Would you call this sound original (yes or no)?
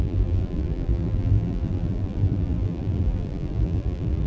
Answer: no